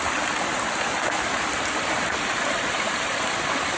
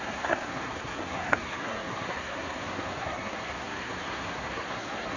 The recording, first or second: first